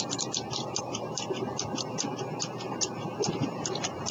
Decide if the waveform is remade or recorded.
remade